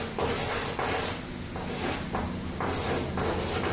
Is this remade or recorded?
recorded